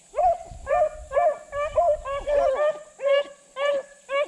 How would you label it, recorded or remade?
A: recorded